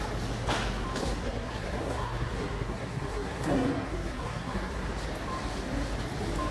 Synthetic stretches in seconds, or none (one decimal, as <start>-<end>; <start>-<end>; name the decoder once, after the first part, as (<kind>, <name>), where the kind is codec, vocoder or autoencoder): 1.0-4.9 (codec, SNAC)

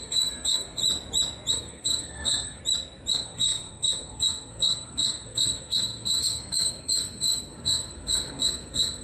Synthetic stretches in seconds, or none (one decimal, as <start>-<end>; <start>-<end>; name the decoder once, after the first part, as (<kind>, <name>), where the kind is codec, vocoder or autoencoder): 0.0-0.8 (codec, SNAC); 1.5-2.6; 3.1-9.0

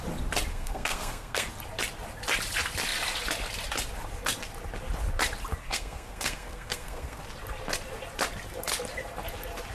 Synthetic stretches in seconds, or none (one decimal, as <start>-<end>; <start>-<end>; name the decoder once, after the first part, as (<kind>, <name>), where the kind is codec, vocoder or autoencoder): 0.5-1.5 (codec, SNAC); 5.6-7.2

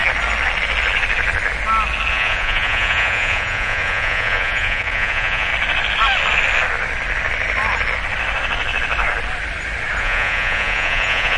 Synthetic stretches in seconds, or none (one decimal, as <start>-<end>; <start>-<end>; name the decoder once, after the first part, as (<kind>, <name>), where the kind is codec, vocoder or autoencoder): 2.1-5.5 (vocoder, Vocos); 10.0-11.4

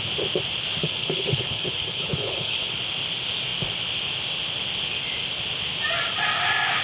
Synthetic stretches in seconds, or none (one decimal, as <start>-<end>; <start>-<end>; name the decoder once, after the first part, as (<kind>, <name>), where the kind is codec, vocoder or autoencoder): 0.8-2.7 (codec, HILCodec)